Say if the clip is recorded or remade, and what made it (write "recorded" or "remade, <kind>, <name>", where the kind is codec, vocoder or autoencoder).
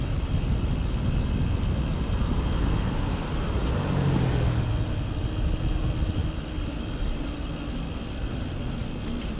recorded